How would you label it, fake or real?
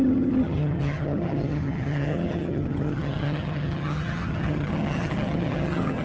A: fake